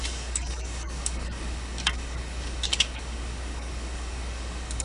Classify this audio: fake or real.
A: fake